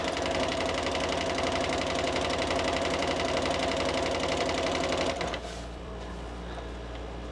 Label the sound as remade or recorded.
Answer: remade